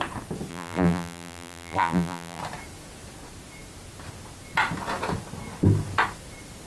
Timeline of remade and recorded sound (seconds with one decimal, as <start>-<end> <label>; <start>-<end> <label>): 0.0-0.5 recorded; 0.5-2.4 remade; 2.4-6.7 recorded